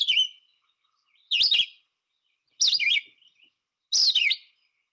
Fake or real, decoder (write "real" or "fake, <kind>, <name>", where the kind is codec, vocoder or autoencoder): real